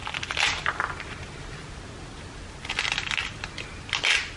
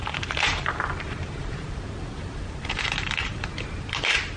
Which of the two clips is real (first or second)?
first